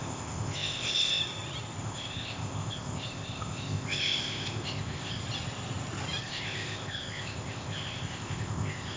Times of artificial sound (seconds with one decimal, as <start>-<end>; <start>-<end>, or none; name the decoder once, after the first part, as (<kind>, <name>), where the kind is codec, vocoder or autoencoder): 0.0-1.2 (codec, ZipCodec); 1.8-5.2; 6.2-9.0